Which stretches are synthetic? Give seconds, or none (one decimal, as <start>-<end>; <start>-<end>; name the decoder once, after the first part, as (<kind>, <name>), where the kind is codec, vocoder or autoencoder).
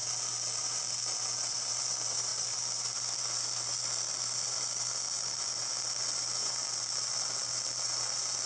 1.7-8.5 (vocoder, BigVGAN v2)